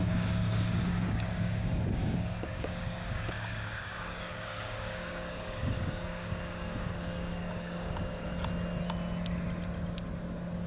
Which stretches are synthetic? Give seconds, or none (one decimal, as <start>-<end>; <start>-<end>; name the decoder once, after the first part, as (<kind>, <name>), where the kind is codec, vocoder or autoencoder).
0.0-8.3 (codec, DAC)